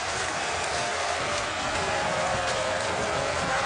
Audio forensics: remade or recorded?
remade